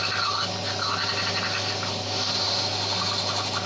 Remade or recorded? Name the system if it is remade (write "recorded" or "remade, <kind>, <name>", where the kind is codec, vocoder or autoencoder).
recorded